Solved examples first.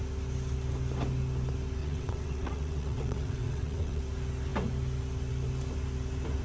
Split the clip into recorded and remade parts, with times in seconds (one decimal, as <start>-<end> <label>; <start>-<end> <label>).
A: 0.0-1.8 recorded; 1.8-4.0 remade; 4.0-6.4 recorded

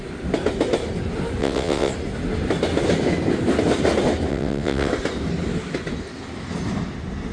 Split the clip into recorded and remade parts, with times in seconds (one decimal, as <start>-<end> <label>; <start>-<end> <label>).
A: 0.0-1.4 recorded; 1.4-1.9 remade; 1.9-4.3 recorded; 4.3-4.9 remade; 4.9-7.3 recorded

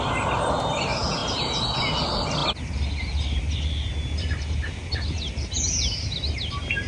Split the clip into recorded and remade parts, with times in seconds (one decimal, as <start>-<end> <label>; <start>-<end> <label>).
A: 0.0-6.9 recorded

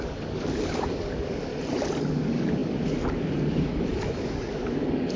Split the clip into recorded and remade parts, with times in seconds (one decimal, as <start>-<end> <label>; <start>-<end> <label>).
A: 0.0-1.5 remade; 1.5-2.1 recorded; 2.1-5.2 remade

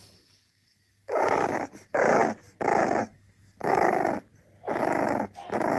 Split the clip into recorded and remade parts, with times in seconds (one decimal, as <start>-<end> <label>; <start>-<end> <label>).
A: 0.0-2.2 remade; 2.2-3.0 recorded; 3.0-4.0 remade; 4.0-5.8 recorded